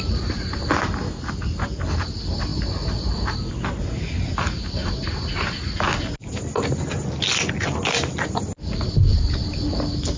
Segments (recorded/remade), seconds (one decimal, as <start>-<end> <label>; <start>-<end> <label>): 0.0-10.2 recorded